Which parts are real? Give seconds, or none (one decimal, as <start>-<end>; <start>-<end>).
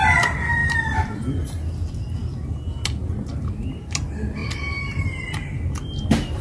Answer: 0.0-0.6; 1.2-6.4